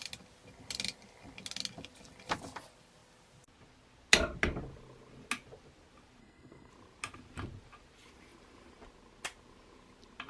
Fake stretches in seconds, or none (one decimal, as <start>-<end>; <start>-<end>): 6.2-6.7